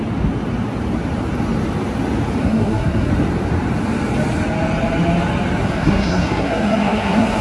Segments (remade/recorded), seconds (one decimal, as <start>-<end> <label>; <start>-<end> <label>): 0.0-2.4 recorded; 2.4-3.1 remade; 3.1-5.6 recorded; 5.6-7.4 remade